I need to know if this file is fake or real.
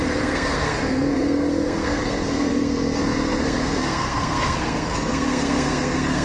fake